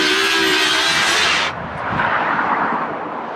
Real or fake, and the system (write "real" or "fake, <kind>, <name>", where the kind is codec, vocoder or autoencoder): fake, vocoder, BigVGAN v2